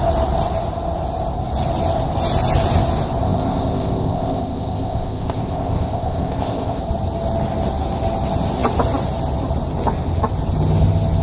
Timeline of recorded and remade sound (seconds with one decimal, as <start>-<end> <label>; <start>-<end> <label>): 0.0-3.2 recorded; 3.2-6.8 remade; 6.8-11.2 recorded